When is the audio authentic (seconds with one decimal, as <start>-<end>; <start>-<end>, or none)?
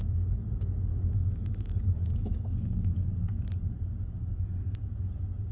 0.0-0.9; 3.4-5.5